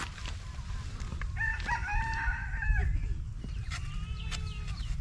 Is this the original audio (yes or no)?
yes